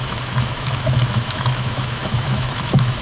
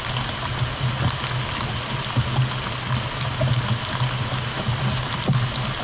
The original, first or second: second